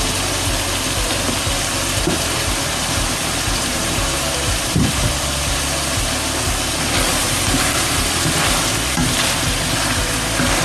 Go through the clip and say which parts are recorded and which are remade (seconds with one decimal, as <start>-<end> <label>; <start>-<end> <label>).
0.0-3.7 recorded; 3.7-5.1 remade; 5.1-7.2 recorded; 7.2-8.0 remade; 8.0-10.6 recorded